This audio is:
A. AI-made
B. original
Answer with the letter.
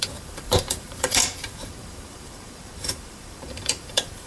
A